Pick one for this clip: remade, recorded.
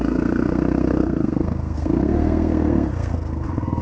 remade